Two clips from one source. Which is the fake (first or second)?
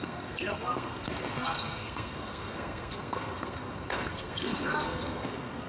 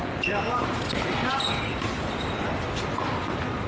first